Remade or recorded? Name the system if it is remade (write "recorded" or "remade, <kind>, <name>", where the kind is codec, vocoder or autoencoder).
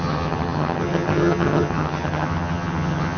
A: remade, vocoder, HiFi-GAN